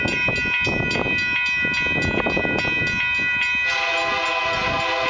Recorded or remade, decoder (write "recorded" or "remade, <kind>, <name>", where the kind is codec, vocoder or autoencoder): recorded